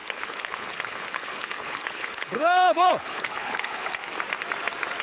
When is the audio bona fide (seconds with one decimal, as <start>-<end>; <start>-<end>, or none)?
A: 4.0-5.0